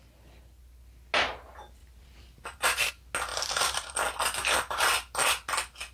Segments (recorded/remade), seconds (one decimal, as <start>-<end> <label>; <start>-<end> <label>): 0.0-1.8 recorded; 1.8-2.9 remade; 2.9-3.3 recorded; 3.3-3.9 remade; 3.9-4.4 recorded; 4.4-4.9 remade; 4.9-5.9 recorded